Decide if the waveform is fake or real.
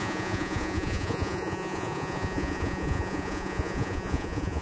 fake